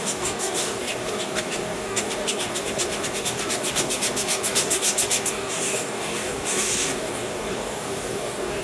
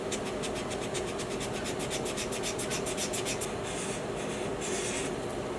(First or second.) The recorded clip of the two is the second